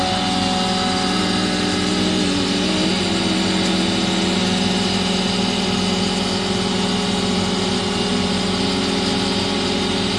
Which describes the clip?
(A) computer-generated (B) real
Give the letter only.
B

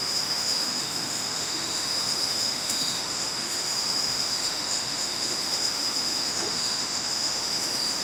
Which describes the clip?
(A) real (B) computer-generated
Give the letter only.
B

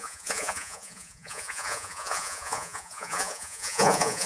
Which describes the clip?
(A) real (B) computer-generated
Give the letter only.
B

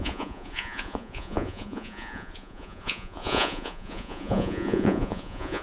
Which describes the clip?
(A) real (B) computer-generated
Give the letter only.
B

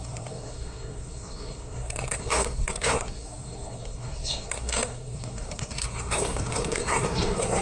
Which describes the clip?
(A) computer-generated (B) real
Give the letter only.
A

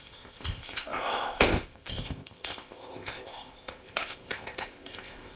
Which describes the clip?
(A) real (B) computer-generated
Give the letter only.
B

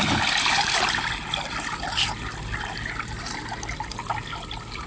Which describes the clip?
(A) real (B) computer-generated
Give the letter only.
B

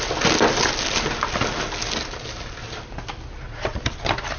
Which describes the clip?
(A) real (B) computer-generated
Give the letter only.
A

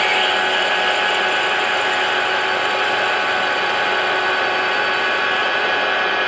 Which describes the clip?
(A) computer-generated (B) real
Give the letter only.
A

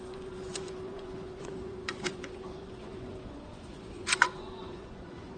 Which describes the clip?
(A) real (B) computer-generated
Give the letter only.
B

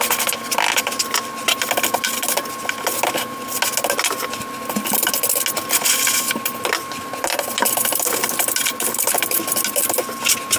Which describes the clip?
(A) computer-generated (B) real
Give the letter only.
B